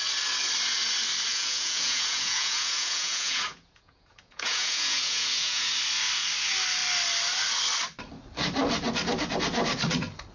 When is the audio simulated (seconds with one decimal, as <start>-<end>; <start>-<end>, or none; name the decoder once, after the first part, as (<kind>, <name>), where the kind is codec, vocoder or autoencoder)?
1.3-5.7 (vocoder, Vocos)